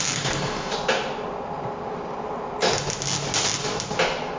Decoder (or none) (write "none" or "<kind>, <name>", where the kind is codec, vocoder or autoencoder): none